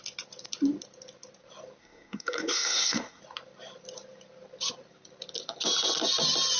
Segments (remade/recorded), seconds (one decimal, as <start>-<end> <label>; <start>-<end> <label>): 0.0-1.8 recorded; 1.8-3.2 remade; 3.2-6.6 recorded